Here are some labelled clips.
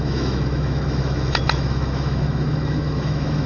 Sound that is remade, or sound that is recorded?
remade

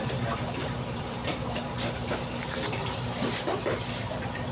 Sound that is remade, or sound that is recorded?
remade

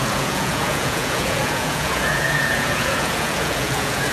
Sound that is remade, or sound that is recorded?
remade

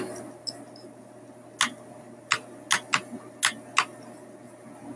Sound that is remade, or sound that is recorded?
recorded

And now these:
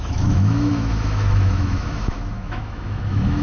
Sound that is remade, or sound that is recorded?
remade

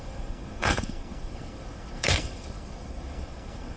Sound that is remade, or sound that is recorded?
remade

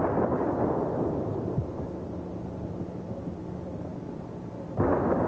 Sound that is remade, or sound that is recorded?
recorded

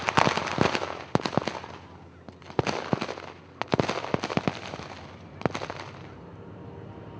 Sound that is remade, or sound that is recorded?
recorded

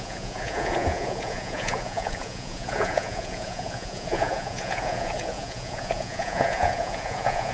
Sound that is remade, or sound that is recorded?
remade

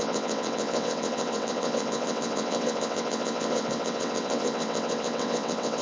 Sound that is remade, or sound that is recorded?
remade